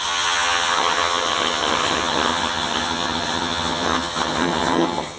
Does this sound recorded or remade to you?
remade